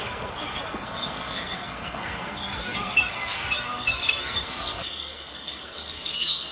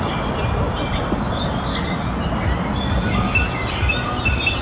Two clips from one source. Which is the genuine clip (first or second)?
second